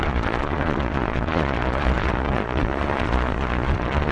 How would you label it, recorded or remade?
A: remade